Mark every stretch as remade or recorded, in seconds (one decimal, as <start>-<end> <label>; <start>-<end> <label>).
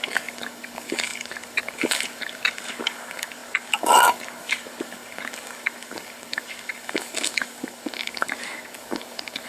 0.0-9.5 remade